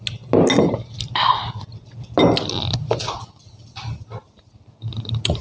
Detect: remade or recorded recorded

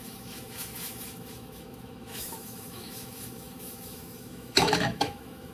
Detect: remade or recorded remade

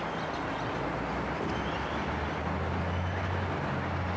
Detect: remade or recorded recorded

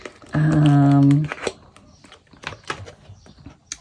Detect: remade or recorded recorded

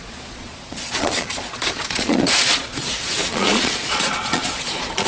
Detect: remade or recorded remade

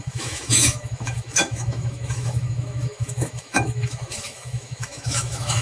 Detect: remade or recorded remade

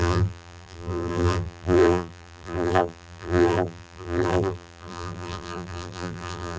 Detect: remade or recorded remade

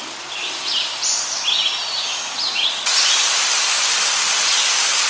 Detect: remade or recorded recorded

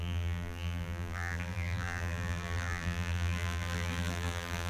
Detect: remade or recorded remade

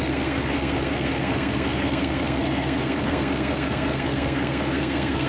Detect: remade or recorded remade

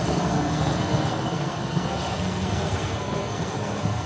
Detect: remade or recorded remade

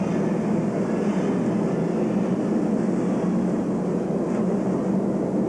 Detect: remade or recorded recorded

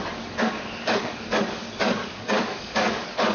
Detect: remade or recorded remade